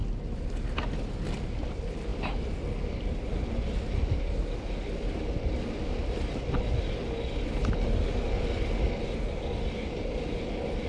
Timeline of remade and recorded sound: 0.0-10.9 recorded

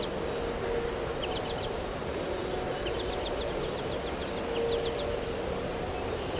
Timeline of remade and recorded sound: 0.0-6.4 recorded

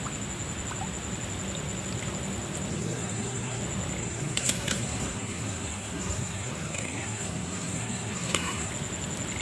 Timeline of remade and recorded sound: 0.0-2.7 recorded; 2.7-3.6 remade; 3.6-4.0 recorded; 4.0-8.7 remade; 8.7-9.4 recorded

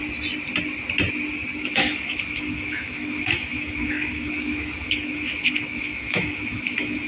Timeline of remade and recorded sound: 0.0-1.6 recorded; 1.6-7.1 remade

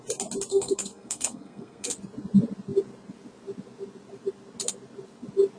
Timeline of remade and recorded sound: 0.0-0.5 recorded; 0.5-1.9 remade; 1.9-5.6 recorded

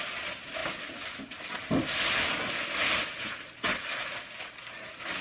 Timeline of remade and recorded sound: 0.0-5.2 recorded

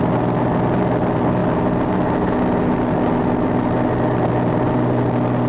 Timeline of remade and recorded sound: 0.0-5.5 recorded

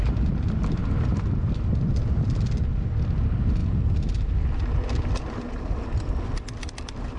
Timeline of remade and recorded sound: 0.0-7.2 recorded